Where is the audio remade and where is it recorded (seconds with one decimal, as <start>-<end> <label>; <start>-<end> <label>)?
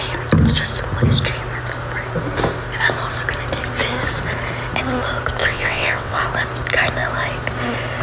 0.0-5.4 recorded; 5.4-6.2 remade; 6.2-8.0 recorded